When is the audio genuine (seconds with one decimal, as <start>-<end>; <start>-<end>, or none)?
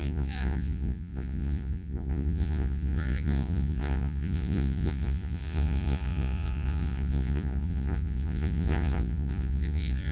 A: none